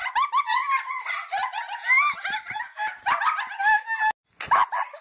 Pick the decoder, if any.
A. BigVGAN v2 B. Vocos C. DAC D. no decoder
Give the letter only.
D